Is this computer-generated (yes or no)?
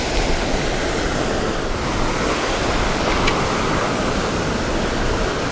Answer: no